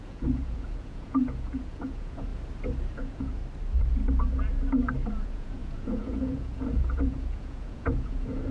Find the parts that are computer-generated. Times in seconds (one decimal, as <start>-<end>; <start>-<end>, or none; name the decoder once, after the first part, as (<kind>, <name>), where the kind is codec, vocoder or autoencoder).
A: 0.0-2.3 (vocoder, Vocos); 2.9-3.4; 5.1-8.5